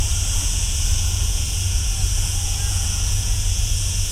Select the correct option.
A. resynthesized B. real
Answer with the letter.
A